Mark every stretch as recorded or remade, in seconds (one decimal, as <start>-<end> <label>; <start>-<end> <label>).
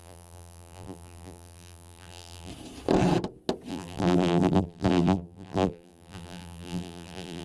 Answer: 0.0-2.5 remade; 2.5-3.7 recorded; 3.7-7.4 remade